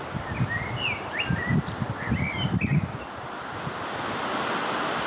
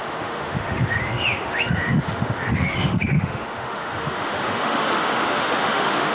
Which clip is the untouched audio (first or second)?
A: first